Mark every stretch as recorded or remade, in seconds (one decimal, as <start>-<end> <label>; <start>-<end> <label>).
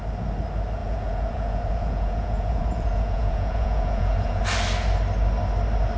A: 0.0-0.8 recorded; 0.8-4.4 remade; 4.4-6.0 recorded